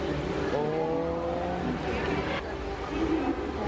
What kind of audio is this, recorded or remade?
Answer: recorded